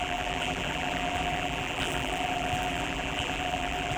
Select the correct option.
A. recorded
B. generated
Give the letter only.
B